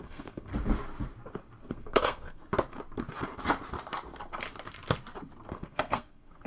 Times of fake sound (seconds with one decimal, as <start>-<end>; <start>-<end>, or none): 0.0-0.5; 1.7-2.4; 5.5-6.5